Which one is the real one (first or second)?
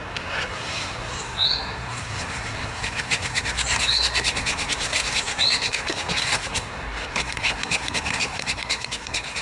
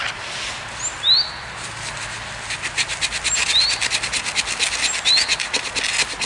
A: second